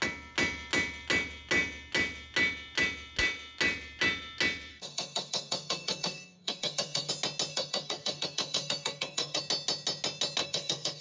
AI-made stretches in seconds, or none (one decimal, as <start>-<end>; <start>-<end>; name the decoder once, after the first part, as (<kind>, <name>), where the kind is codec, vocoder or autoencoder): 4.7-7.1 (codec, SNAC); 7.5-9.4; 10.4-11.0